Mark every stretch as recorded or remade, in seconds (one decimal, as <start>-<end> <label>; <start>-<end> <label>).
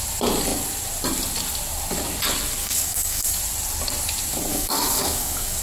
0.0-2.6 recorded; 2.6-3.4 remade; 3.4-4.5 recorded; 4.5-5.6 remade